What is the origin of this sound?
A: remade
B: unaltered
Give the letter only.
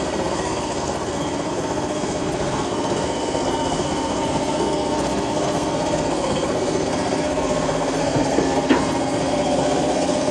A